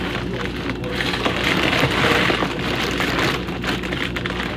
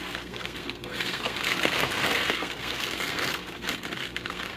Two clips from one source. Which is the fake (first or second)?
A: second